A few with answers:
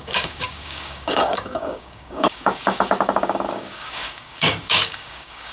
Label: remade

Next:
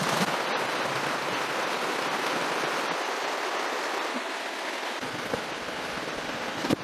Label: recorded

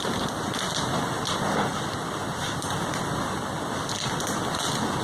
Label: recorded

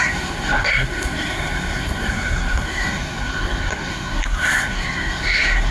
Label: remade